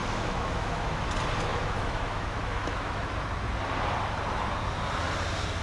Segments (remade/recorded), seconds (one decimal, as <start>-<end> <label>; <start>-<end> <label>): 0.0-1.0 remade; 1.0-1.5 recorded; 1.5-3.1 remade; 3.1-5.6 recorded